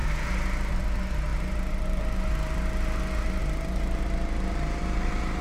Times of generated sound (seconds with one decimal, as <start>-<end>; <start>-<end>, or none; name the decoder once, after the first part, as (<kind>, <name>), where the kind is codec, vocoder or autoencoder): none